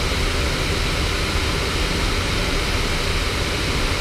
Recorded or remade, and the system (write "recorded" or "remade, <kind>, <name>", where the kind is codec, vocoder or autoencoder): recorded